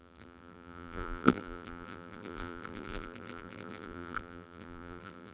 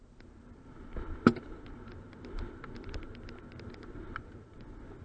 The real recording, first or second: second